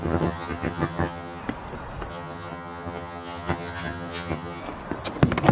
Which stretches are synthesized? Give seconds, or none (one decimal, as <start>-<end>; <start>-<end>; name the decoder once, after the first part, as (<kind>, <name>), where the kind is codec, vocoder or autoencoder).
0.0-1.4 (vocoder, HiFi-GAN); 2.1-4.6